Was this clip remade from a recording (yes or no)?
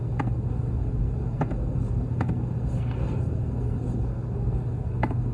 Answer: yes